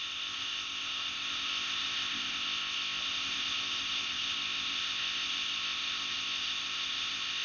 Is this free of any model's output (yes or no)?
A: no